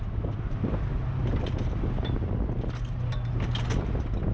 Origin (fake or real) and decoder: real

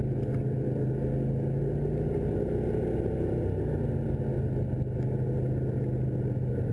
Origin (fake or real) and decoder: real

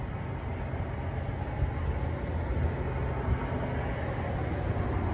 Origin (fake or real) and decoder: real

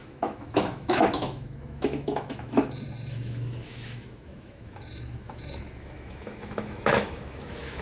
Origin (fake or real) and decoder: fake, autoencoder, DAC-VAE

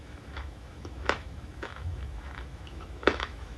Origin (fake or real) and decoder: fake, autoencoder, DAC-VAE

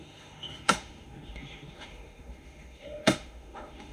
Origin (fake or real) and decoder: fake, autoencoder, DAC-VAE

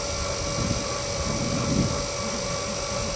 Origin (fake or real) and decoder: real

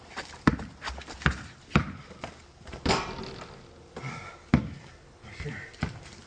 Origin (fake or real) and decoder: real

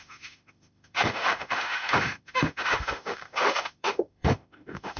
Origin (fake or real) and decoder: fake, autoencoder, DAC-VAE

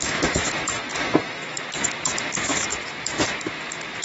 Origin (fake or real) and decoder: fake, autoencoder, DAC-VAE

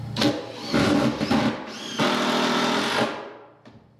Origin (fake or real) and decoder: real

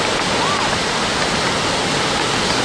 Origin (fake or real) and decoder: real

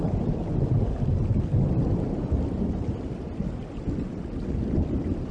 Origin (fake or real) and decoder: real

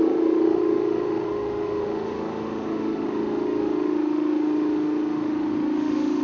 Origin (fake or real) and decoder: fake, autoencoder, DAC-VAE